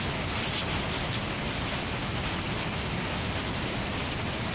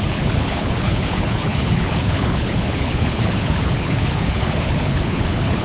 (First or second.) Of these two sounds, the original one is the first